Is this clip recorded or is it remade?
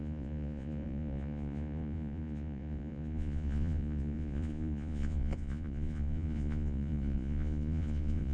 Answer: remade